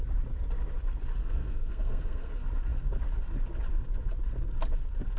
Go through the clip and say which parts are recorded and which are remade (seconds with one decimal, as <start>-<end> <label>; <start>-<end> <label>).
0.0-1.2 recorded; 1.2-2.3 remade; 2.3-5.2 recorded